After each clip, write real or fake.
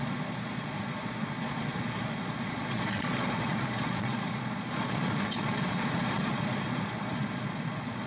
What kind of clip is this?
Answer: fake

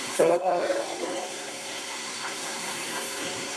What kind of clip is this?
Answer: fake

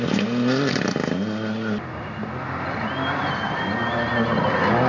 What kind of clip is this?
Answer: real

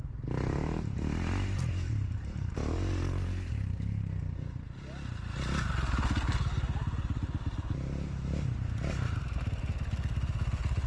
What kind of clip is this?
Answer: real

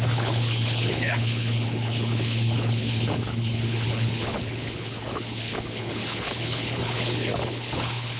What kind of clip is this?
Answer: fake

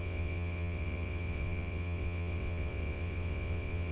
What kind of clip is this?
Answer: fake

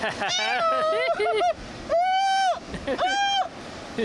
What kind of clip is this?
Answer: real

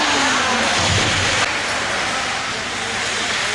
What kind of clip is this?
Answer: real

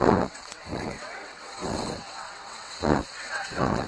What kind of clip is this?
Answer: fake